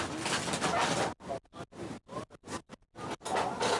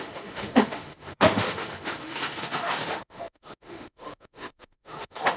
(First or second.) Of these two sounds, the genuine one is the first